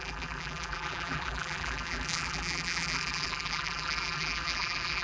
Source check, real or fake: fake